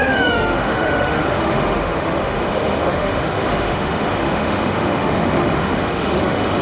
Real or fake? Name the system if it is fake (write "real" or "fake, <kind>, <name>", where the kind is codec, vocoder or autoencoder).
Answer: fake, autoencoder, DAC-VAE